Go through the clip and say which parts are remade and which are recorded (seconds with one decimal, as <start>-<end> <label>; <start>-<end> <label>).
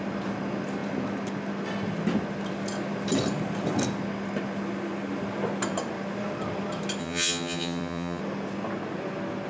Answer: 0.0-7.0 recorded; 7.0-8.2 remade; 8.2-9.5 recorded